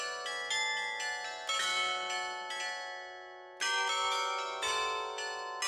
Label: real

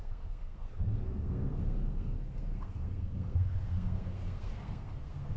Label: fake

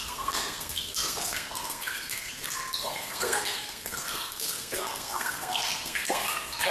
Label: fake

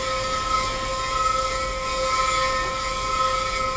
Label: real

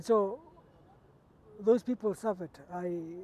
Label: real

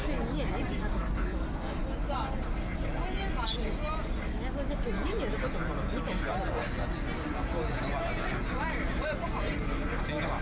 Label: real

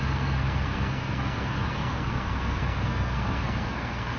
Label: fake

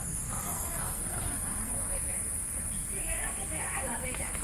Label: fake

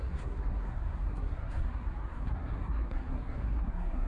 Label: fake